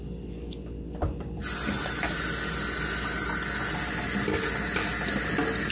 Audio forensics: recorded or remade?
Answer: recorded